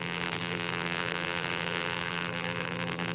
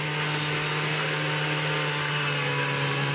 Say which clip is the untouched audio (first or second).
second